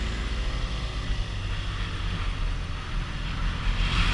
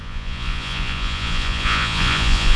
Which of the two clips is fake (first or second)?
second